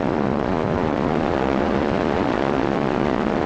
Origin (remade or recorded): remade